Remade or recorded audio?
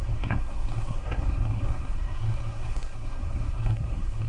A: remade